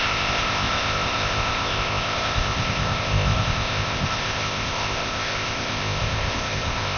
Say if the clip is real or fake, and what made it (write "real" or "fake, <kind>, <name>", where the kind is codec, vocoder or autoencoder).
fake, codec, ZipCodec